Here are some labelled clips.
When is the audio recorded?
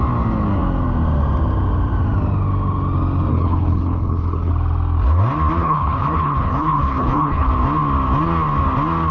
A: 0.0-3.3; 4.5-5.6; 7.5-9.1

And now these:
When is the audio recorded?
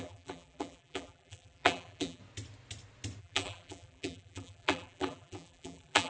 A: 2.2-3.2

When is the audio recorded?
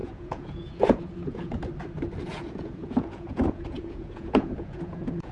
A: 1.6-2.3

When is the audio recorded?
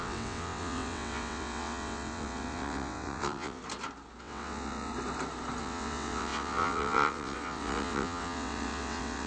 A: 3.6-4.2; 4.9-5.6